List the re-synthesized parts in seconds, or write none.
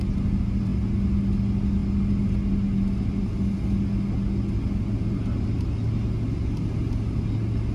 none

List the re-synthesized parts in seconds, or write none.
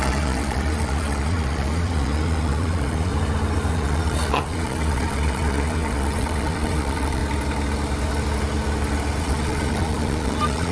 0.0-3.1 (vocoder, Vocos); 3.7-7.2; 9.2-10.7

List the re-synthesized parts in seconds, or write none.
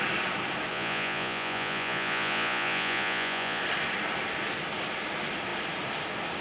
0.7-3.6 (vocoder, Vocos)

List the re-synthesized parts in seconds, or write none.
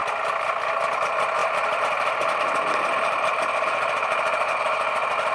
none